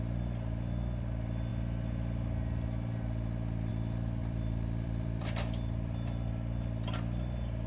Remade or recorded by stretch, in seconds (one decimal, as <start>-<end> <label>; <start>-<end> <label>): 0.0-4.2 recorded; 4.2-6.3 remade; 6.3-7.7 recorded